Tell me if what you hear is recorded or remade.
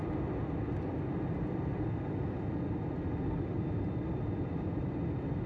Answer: recorded